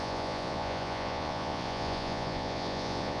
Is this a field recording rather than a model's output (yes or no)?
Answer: no